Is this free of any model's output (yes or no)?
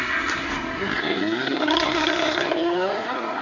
no